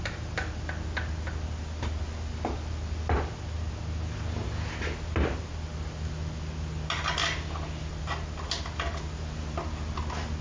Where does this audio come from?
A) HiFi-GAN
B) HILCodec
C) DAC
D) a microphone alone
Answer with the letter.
D